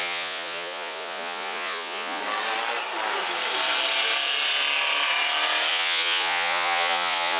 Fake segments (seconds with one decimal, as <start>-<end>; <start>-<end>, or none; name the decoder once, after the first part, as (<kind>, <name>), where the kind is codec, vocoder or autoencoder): 0.0-2.2 (vocoder, Vocos); 5.7-7.4